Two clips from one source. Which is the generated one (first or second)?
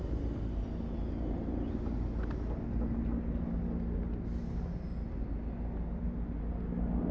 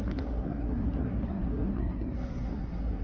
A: second